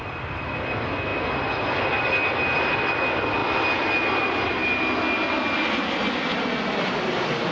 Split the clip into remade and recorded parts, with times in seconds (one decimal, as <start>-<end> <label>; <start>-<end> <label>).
0.0-7.5 recorded